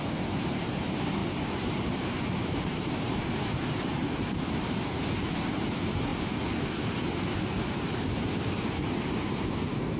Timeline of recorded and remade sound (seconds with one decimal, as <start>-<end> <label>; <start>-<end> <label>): 0.0-1.2 recorded; 1.2-3.2 remade; 3.2-3.9 recorded; 3.9-5.0 remade; 5.0-10.0 recorded